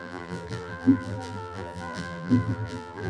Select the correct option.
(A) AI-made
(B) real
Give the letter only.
A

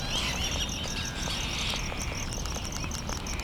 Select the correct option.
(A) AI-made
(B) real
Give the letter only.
B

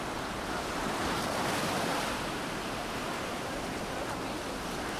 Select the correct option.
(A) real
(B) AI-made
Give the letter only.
A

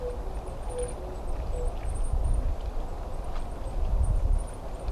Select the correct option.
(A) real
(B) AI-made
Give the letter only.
A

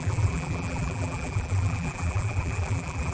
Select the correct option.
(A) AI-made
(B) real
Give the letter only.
A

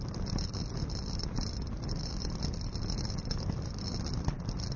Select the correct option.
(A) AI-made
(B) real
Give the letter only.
B